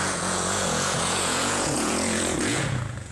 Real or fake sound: fake